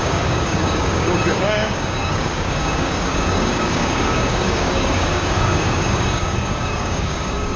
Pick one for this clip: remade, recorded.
remade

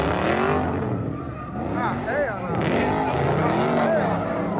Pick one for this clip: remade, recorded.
recorded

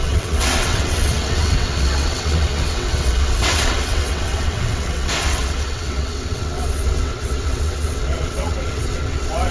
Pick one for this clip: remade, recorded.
remade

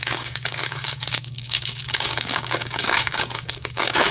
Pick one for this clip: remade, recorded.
remade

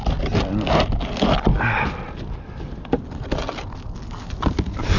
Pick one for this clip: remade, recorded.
recorded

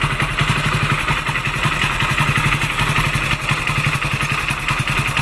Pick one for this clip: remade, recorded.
recorded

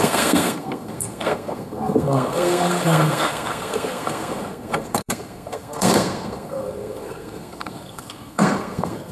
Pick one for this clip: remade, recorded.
remade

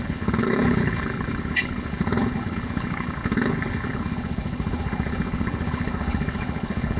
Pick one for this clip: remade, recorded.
remade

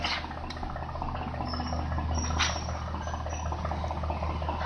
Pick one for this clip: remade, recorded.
recorded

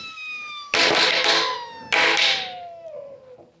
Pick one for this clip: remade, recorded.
recorded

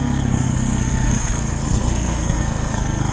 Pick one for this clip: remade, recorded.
remade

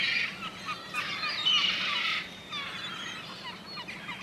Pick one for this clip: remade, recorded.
recorded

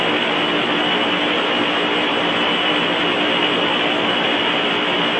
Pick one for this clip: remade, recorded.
recorded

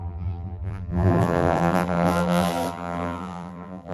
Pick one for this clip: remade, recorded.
remade